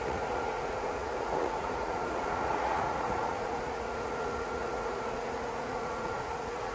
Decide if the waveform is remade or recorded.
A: remade